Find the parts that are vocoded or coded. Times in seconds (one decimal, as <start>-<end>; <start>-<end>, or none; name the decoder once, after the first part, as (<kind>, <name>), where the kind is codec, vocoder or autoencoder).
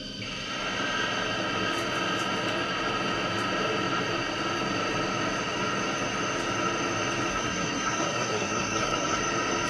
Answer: 7.3-9.2 (codec, SNAC)